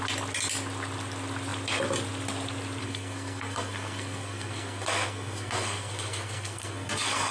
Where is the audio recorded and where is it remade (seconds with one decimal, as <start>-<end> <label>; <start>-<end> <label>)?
0.0-2.8 recorded; 2.8-7.3 remade